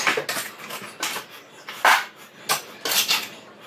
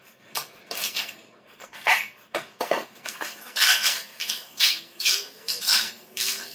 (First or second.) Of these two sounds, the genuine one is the first